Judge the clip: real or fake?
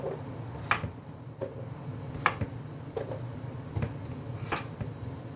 real